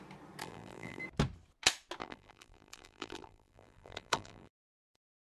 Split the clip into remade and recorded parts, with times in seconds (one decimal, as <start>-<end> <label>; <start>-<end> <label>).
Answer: 0.0-0.4 recorded; 0.4-1.0 remade; 1.0-2.0 recorded; 2.0-5.3 remade